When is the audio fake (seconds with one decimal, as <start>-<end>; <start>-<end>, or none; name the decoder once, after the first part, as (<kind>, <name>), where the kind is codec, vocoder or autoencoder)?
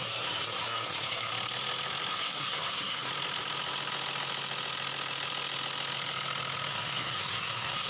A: 0.0-1.3 (codec, SNAC); 2.1-3.1; 6.7-7.9